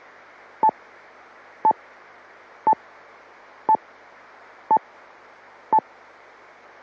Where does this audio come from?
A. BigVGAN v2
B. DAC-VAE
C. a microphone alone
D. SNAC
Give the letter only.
C